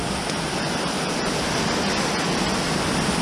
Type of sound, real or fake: real